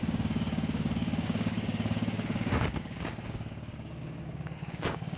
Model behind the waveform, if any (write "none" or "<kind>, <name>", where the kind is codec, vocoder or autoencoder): codec, DAC